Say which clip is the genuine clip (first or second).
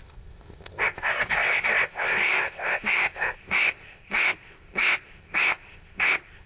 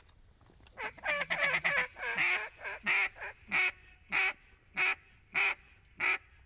second